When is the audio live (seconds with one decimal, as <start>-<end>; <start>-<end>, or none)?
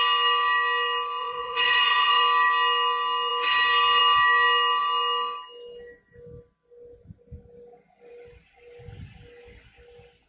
0.0-1.2; 2.2-10.3